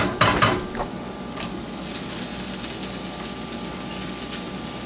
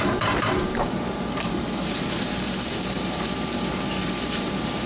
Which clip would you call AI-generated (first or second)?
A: second